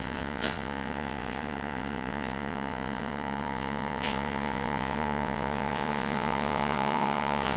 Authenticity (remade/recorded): remade